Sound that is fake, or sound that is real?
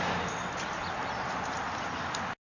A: real